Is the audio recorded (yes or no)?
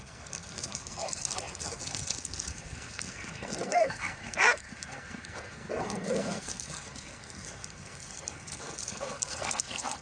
no